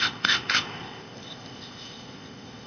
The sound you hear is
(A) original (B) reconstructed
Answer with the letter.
B